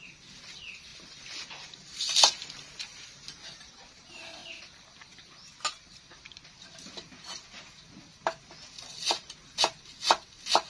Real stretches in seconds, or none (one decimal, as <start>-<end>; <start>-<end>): 0.0-0.9; 2.5-10.7